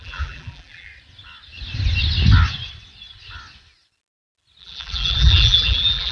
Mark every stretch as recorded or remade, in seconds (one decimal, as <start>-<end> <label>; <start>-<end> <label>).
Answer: 0.0-0.9 remade; 0.9-4.6 recorded; 4.6-6.1 remade